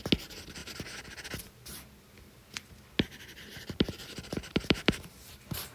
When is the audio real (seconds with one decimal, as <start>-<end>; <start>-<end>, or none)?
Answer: 0.0-3.5; 5.3-5.7